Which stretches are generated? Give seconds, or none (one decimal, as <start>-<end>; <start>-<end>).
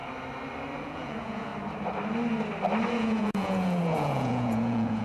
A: 0.8-1.5; 2.9-5.0